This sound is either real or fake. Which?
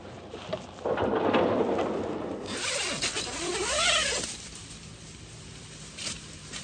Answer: real